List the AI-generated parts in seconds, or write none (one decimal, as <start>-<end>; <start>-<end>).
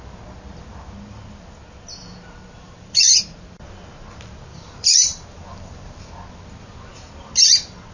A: 2.4-3.2; 4.5-6.1